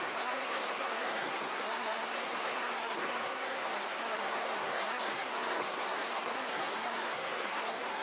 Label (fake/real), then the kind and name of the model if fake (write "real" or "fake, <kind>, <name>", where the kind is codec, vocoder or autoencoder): fake, codec, SNAC